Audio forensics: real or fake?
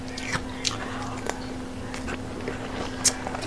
real